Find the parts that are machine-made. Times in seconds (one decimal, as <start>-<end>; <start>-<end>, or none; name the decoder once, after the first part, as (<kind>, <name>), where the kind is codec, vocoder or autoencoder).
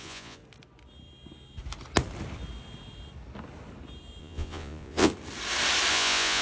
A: 0.0-0.4 (vocoder, Vocos); 4.2-5.1; 5.9-6.4